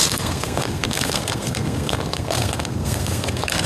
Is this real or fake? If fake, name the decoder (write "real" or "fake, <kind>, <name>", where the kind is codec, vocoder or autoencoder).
fake, codec, SNAC